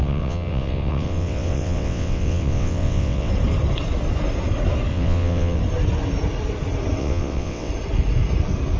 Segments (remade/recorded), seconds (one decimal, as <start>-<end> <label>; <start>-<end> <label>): 0.0-3.3 remade; 3.3-4.9 recorded; 4.9-5.6 remade; 5.6-7.0 recorded; 7.0-7.7 remade; 7.7-8.8 recorded